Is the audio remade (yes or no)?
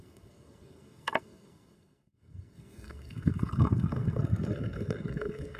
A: yes